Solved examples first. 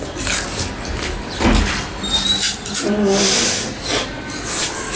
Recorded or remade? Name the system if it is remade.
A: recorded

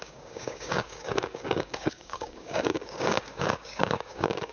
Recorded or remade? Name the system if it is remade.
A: remade, codec, DAC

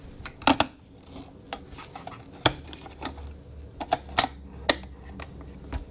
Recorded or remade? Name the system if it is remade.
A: recorded